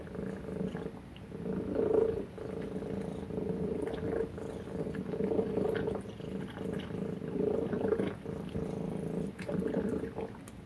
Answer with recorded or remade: recorded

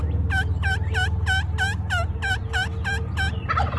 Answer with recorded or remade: recorded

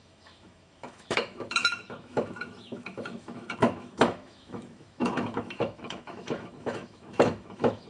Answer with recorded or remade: remade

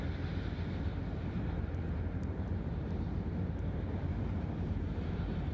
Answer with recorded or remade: remade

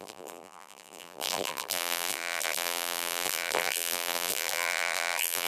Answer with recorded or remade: remade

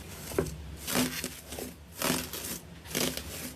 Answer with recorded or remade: recorded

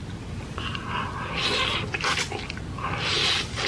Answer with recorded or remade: recorded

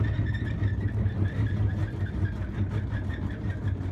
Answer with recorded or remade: recorded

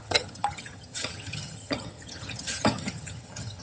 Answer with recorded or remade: remade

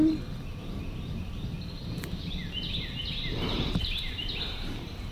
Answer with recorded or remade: recorded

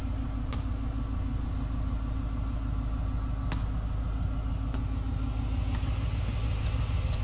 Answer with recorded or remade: recorded